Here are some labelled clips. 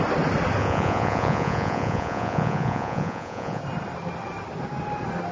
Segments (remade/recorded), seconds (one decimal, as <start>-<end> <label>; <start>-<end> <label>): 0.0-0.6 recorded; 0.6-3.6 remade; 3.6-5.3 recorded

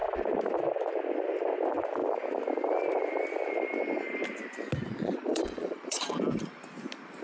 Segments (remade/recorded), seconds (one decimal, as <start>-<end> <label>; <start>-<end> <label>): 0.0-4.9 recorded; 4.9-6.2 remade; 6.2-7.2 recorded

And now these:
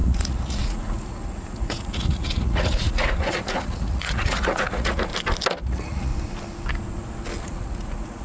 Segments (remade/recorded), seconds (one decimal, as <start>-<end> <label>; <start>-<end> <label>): 0.0-5.1 remade; 5.1-5.6 recorded; 5.6-6.1 remade; 6.1-7.4 recorded; 7.4-8.2 remade